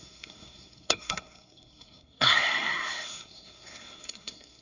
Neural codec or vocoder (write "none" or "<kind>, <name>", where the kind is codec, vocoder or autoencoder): codec, SNAC